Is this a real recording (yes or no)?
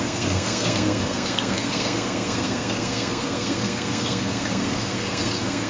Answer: no